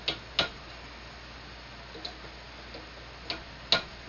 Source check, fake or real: real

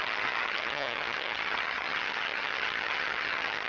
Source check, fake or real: fake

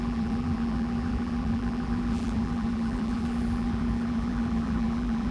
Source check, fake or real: fake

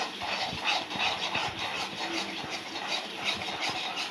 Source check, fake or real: fake